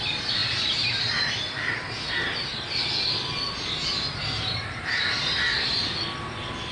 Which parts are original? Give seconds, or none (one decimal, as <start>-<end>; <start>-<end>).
2.5-4.2; 5.8-6.7